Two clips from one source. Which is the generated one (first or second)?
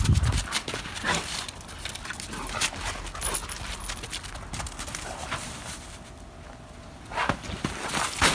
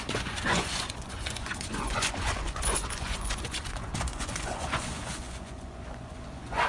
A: second